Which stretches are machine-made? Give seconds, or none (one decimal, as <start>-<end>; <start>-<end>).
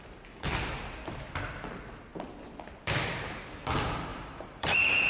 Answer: 4.1-5.1